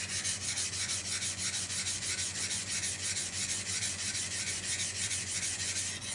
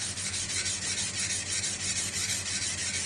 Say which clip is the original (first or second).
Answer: second